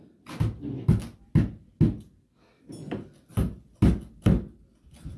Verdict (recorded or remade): recorded